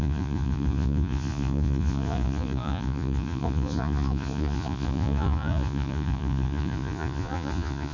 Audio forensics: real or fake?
fake